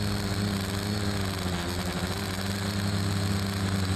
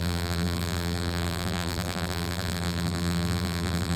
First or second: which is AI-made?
second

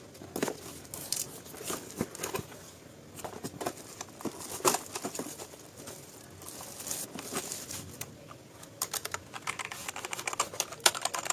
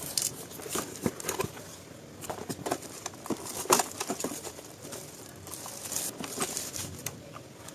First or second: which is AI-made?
second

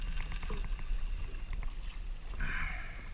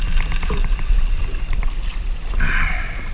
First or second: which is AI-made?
second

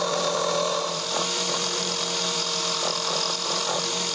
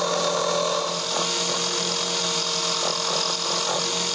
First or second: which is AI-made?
first